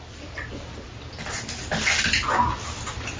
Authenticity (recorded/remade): recorded